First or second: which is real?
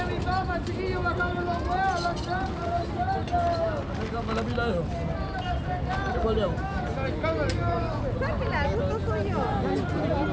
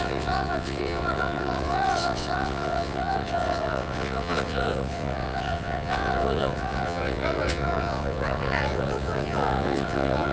first